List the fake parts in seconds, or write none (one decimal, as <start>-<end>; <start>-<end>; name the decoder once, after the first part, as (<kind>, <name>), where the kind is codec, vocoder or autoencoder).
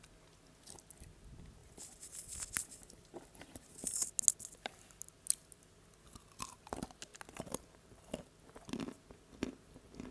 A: 7.1-8.1 (vocoder, BigVGAN v2)